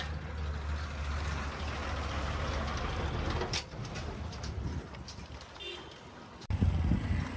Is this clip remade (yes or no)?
no